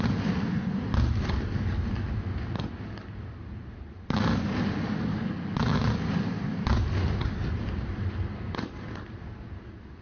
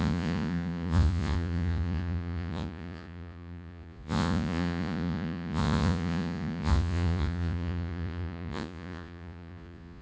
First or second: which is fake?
second